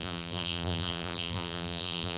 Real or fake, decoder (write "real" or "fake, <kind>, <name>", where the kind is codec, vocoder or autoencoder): fake, vocoder, BigVGAN v2